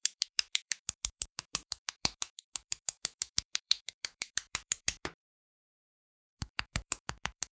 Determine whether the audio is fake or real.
fake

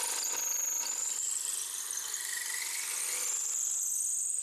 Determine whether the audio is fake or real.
real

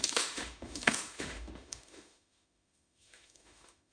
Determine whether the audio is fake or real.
fake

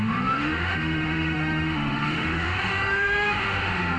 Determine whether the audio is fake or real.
fake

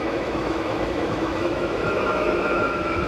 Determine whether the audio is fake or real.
fake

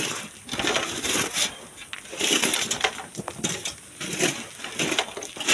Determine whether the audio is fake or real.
real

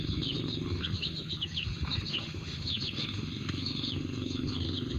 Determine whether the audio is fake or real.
fake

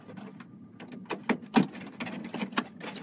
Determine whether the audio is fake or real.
real